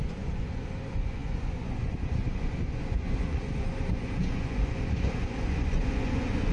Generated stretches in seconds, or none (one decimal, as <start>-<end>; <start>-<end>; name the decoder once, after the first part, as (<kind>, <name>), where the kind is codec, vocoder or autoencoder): 0.0-6.5 (vocoder, Vocos)